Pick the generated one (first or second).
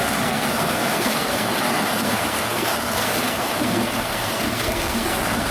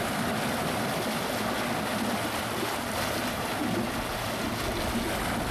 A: first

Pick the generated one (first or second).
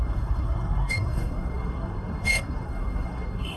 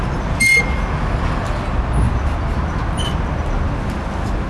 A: first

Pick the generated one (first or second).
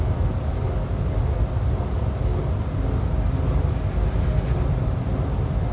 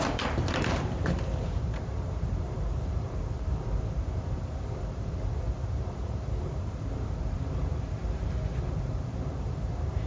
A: second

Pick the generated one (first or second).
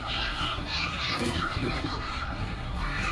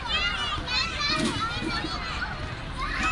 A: first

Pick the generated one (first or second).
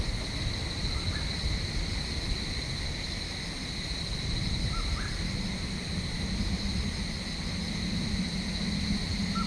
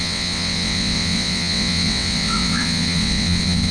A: second